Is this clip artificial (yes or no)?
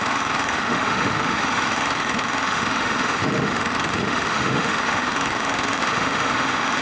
yes